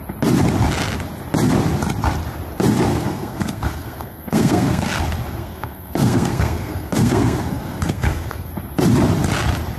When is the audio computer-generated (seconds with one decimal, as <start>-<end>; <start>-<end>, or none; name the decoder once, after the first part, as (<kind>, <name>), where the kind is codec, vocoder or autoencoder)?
2.9-5.0 (codec, SNAC); 5.4-8.5